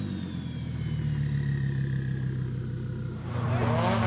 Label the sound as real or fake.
real